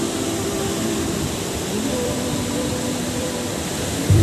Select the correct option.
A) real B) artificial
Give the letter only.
B